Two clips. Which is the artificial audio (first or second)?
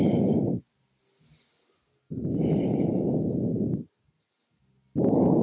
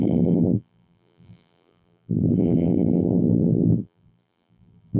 second